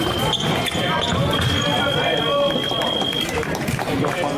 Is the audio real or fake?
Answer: real